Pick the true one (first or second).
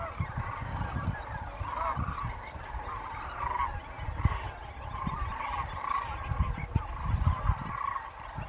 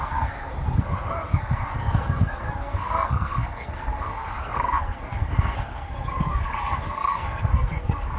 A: first